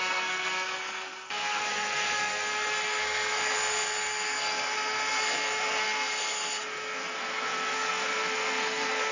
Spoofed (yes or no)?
yes